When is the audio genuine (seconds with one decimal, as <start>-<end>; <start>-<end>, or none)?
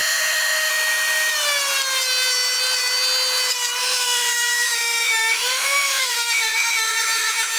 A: 0.7-3.8